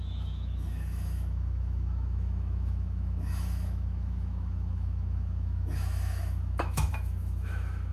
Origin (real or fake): fake